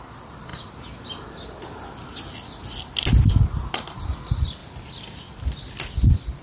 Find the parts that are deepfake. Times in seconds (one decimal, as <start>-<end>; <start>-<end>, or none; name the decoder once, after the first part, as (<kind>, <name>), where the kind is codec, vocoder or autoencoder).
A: none